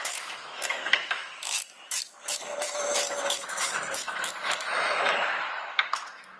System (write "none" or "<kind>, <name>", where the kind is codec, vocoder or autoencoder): autoencoder, DAC-VAE